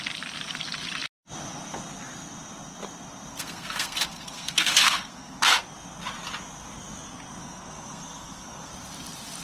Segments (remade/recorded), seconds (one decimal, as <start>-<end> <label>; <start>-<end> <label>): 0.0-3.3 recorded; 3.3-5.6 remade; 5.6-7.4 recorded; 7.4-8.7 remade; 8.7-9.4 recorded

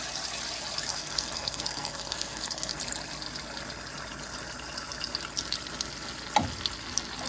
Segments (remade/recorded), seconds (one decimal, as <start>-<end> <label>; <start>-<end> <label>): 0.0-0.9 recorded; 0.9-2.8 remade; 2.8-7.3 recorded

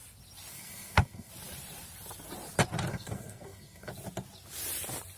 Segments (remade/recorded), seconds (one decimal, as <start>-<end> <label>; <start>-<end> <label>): 0.0-0.5 recorded; 0.5-1.3 remade; 1.3-2.9 recorded; 2.9-3.9 remade; 3.9-5.2 recorded

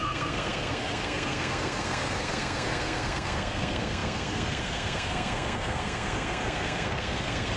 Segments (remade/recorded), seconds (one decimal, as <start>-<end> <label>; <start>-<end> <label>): 0.0-7.6 remade